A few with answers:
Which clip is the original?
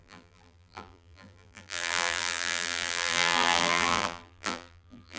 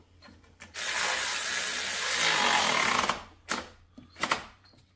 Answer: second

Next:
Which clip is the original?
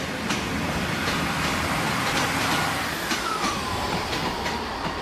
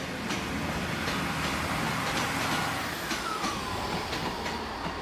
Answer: second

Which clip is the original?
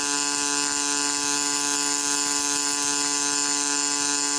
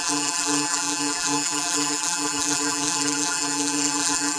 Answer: first